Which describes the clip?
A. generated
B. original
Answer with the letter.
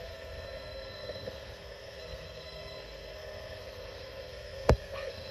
A